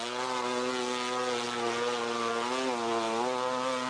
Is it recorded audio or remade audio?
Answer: recorded